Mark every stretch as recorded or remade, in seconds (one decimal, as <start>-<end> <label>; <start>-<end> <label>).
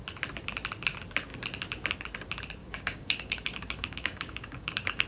0.0-2.6 recorded; 2.6-5.1 remade